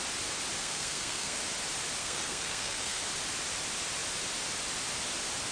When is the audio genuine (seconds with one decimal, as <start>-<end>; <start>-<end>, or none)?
0.0-0.6; 1.4-2.0; 3.0-5.5